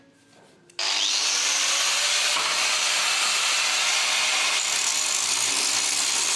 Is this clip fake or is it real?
real